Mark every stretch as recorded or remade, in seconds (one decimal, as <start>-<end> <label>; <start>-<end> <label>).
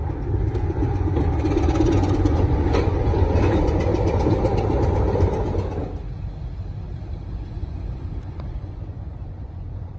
0.0-0.6 recorded; 0.6-3.9 remade; 3.9-7.3 recorded; 7.3-10.0 remade